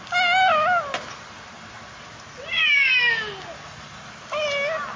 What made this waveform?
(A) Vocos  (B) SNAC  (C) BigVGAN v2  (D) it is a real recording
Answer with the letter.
D